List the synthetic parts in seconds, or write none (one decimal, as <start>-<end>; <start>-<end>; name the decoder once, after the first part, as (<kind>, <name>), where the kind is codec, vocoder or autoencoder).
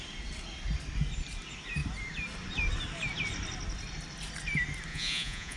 4.9-5.6 (vocoder, Vocos)